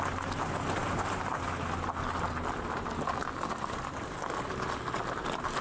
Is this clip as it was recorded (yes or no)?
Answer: yes